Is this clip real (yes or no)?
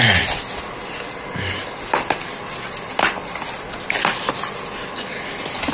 yes